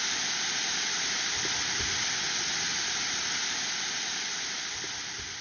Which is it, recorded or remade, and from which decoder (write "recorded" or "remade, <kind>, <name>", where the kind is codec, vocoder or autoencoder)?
recorded